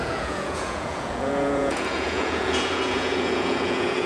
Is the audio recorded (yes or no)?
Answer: no